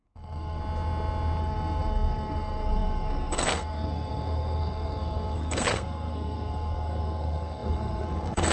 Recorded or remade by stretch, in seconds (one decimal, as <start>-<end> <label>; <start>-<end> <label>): 0.0-0.6 remade; 0.6-1.4 recorded; 1.4-8.5 remade